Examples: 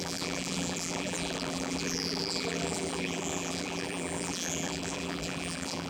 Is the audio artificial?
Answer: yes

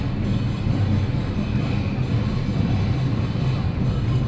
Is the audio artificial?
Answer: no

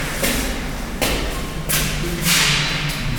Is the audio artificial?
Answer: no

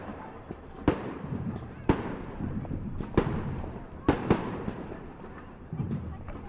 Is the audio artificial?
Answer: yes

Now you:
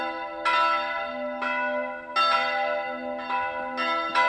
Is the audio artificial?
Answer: no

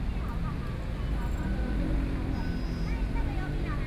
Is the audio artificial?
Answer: no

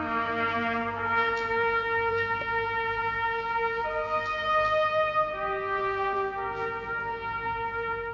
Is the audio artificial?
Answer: yes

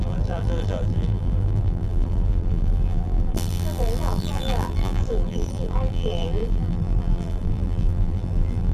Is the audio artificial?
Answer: yes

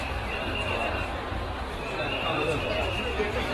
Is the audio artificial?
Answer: yes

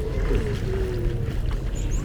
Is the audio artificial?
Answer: no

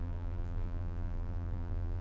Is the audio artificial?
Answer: yes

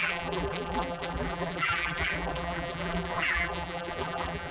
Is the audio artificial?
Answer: yes